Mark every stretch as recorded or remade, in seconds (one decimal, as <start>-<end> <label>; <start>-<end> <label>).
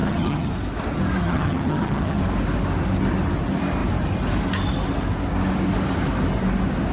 0.0-0.5 remade; 0.5-1.2 recorded; 1.2-2.2 remade; 2.2-6.9 recorded